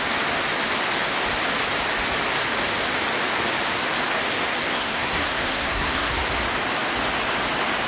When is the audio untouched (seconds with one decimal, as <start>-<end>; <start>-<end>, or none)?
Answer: 0.0-4.7; 6.1-7.9